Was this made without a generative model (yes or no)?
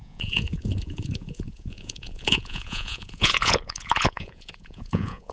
no